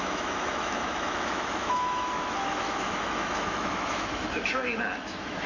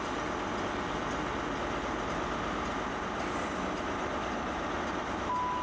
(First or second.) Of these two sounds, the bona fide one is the second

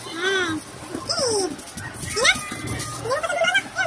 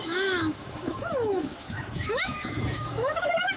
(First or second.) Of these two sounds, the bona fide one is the first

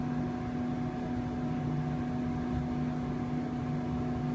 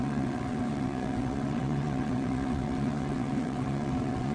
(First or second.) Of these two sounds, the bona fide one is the first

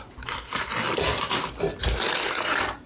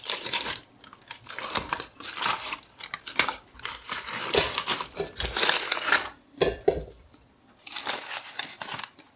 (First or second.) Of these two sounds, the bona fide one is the first